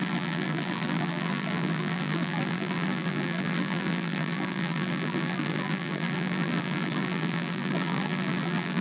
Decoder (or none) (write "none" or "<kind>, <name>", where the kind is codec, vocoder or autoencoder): vocoder, BigVGAN v2